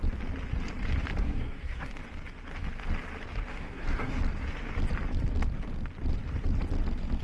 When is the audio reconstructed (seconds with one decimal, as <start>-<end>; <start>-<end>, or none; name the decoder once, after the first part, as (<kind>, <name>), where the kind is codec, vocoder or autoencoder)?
1.2-1.9 (codec, SNAC); 3.5-4.2